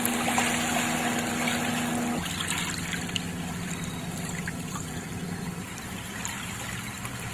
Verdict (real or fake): real